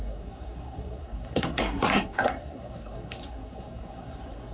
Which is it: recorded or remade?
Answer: remade